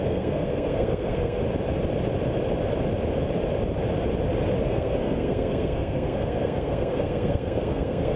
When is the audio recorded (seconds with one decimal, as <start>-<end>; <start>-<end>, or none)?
1.4-4.6